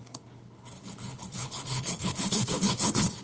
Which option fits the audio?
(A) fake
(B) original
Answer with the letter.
A